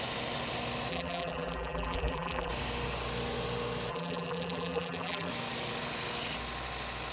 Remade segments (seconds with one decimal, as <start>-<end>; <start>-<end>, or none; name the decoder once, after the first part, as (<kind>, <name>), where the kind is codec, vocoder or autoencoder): 0.9-2.5 (vocoder, BigVGAN v2); 3.9-5.3